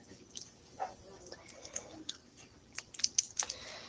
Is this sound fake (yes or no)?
no